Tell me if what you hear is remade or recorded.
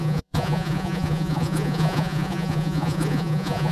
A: remade